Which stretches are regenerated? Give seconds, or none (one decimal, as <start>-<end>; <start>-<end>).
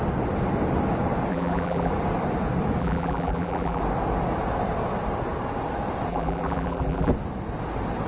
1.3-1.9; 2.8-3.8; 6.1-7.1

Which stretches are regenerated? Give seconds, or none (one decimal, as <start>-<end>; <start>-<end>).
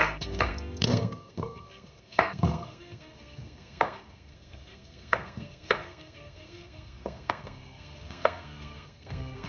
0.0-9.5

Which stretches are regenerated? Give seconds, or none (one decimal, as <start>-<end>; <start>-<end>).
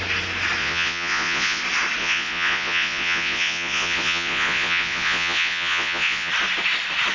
0.6-1.6; 2.0-6.3